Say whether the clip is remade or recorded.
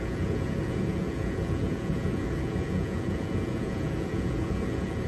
remade